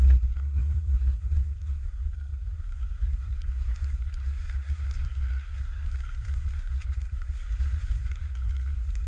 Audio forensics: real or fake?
fake